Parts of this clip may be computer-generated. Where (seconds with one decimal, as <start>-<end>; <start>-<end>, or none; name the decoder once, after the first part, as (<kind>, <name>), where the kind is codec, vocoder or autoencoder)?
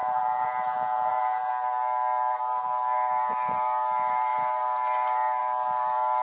0.0-1.5 (vocoder, Vocos)